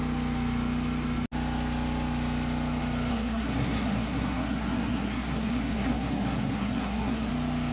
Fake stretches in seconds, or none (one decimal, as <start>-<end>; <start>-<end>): 3.1-7.3